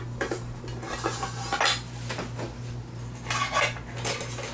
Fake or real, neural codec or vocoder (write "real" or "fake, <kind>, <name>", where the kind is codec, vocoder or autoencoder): real